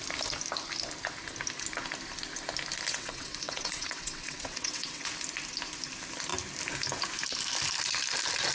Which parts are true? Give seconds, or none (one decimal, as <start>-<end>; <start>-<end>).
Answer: 0.0-2.9; 5.1-8.5